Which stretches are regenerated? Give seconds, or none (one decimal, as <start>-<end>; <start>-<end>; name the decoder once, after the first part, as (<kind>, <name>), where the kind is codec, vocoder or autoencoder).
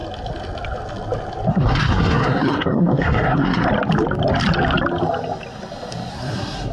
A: 1.5-3.7 (codec, SNAC); 6.1-6.7